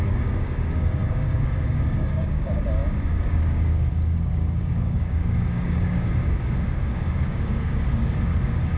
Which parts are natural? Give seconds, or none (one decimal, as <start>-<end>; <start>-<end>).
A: none